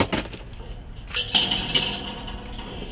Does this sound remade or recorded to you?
recorded